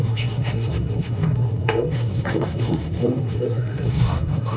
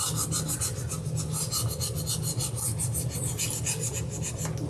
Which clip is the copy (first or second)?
first